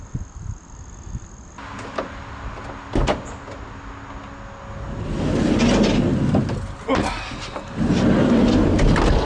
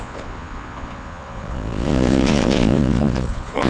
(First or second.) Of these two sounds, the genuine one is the first